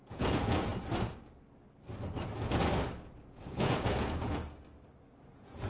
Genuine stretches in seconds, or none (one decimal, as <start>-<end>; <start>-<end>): 0.7-3.0; 4.4-5.2